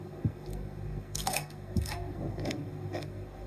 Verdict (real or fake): fake